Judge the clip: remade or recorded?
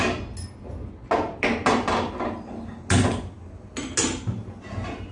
recorded